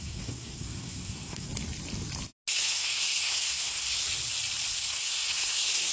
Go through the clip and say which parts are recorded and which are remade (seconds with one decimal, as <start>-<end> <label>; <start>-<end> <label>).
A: 0.0-1.5 remade; 1.5-2.5 recorded; 2.5-4.0 remade; 4.0-4.8 recorded; 4.8-5.9 remade